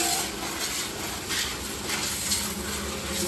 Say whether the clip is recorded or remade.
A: recorded